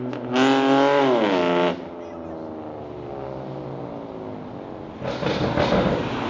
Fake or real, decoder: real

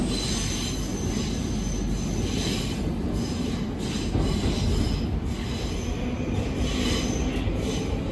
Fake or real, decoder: real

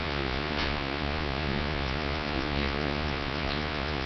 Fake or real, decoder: fake, vocoder, Vocos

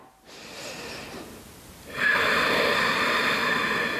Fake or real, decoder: real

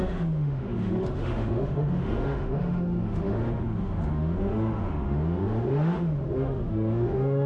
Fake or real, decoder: fake, autoencoder, DAC-VAE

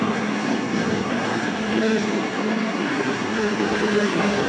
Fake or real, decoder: fake, codec, SNAC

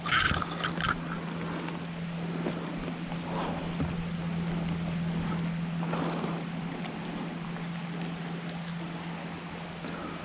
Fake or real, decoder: real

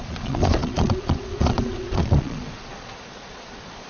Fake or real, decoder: fake, vocoder, Vocos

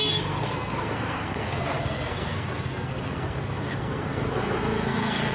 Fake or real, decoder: fake, codec, SNAC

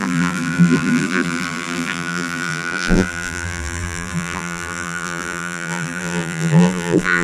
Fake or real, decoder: fake, vocoder, BigVGAN v2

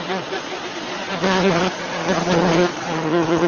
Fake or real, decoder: fake, vocoder, Vocos